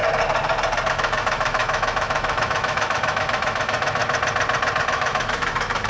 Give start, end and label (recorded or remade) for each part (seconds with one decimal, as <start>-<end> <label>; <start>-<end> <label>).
0.0-0.9 recorded; 0.9-4.0 remade; 4.0-4.8 recorded; 4.8-5.9 remade